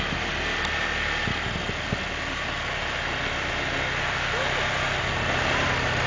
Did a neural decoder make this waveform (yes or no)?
no